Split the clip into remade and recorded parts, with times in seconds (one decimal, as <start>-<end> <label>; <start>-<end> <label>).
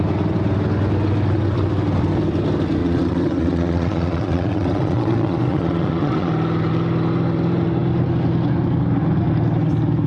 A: 0.0-2.8 recorded; 2.8-6.3 remade; 6.3-10.1 recorded